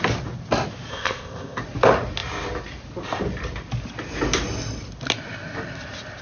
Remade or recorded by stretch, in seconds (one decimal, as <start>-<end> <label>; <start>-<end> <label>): 0.0-0.9 recorded; 0.9-1.6 remade; 1.6-6.2 recorded